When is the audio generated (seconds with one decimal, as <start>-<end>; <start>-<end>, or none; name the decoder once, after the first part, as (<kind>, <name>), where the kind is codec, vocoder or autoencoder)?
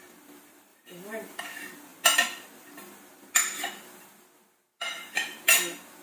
0.7-1.4 (vocoder, BigVGAN v2)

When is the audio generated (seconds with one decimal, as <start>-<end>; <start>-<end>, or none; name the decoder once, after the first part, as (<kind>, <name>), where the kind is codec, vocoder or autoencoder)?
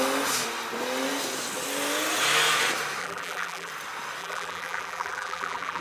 3.0-3.7 (vocoder, BigVGAN v2); 4.2-5.8